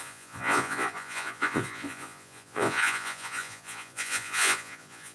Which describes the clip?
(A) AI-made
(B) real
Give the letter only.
A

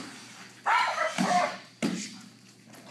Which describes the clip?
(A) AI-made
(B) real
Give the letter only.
B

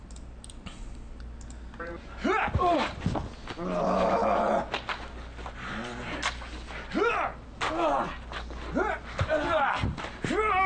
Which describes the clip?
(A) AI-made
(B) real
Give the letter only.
B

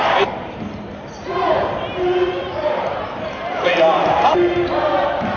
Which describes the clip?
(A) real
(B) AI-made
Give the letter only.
B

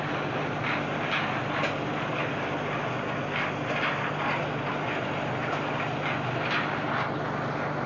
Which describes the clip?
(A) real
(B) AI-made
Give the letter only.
A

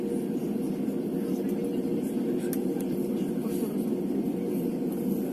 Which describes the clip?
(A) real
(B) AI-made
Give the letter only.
A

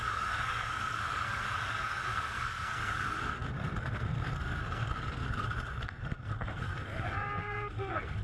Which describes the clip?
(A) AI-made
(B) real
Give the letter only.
A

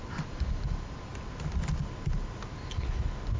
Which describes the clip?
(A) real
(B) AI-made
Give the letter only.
A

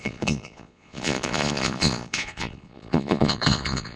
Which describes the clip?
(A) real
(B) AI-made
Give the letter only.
B